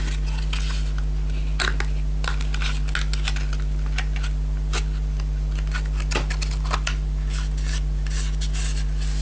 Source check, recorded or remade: recorded